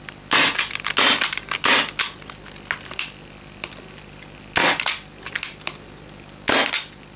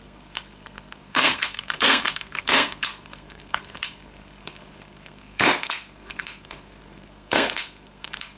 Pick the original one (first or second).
first